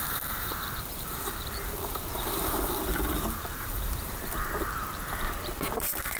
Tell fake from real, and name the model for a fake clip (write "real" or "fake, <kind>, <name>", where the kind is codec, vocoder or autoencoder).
fake, vocoder, BigVGAN v2